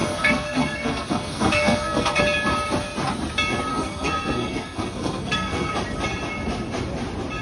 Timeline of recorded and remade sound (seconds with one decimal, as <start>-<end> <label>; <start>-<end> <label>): 0.0-2.2 remade; 2.2-3.7 recorded; 3.7-5.7 remade; 5.7-7.4 recorded